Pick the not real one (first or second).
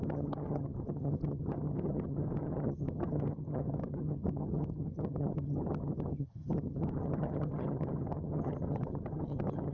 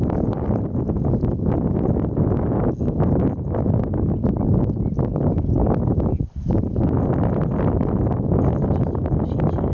first